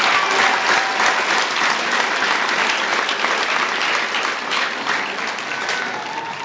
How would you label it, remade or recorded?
recorded